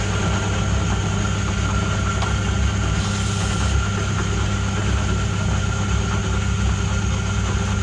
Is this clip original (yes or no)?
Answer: yes